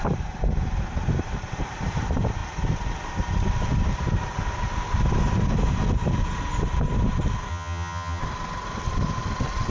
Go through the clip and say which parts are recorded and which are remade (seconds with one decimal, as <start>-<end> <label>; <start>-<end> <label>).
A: 0.0-7.5 recorded; 7.5-8.2 remade; 8.2-9.7 recorded